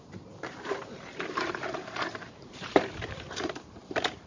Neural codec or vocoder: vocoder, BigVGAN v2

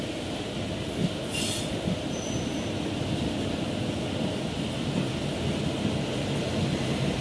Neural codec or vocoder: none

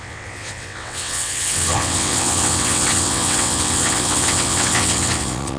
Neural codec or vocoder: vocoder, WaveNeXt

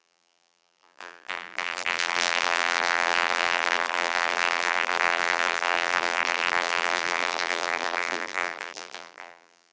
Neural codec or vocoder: vocoder, BigVGAN v2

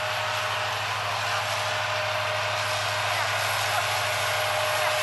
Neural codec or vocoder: none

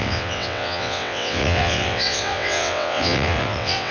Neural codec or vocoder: vocoder, WaveNeXt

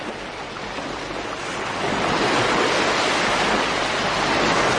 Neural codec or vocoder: none